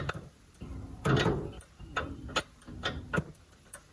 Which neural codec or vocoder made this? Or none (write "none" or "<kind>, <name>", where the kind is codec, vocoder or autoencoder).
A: vocoder, BigVGAN v2